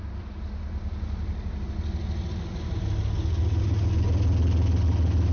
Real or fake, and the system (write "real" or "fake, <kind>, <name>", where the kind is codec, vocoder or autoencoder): real